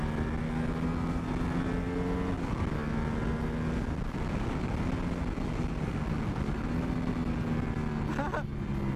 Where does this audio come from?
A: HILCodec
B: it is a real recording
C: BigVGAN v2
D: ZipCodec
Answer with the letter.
B